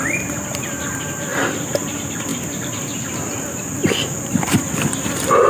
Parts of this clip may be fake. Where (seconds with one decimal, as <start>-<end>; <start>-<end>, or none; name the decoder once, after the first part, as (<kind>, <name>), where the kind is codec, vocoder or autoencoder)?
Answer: 0.0-1.3 (vocoder, BigVGAN v2); 1.9-2.3